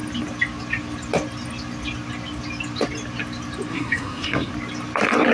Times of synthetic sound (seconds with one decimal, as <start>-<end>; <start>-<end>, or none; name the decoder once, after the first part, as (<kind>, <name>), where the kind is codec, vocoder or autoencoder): 3.7-4.5 (codec, SNAC)